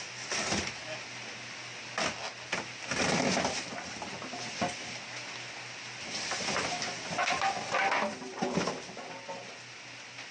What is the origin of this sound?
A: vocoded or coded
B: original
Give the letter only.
B